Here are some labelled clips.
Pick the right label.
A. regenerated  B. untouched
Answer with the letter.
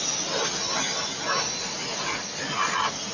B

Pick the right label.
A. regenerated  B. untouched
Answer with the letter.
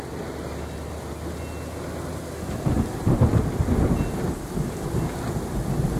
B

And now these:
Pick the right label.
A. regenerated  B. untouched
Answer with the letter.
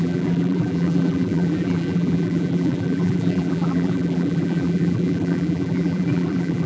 A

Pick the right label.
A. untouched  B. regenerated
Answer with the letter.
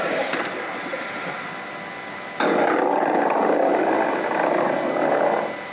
B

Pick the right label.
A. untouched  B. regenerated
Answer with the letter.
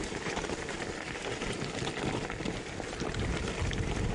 A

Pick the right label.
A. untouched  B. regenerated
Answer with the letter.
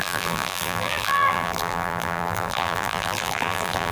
B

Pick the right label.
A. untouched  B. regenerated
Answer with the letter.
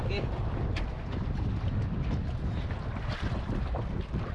A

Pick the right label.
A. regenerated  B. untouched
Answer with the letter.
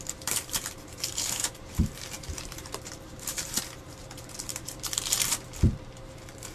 A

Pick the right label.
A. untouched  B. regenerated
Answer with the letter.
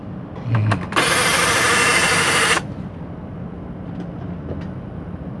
A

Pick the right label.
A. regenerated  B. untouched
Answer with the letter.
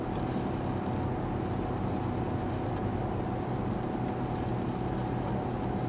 B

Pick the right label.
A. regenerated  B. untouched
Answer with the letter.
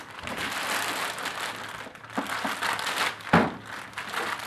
B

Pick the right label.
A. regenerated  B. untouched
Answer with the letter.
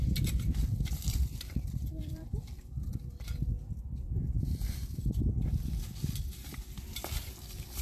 A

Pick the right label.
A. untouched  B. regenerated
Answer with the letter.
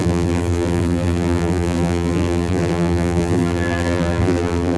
B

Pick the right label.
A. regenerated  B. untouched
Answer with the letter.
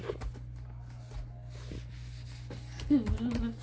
B